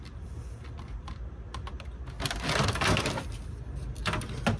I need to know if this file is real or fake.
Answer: real